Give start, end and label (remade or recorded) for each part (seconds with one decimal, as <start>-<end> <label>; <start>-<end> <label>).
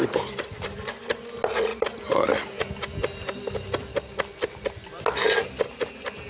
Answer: 0.0-6.3 recorded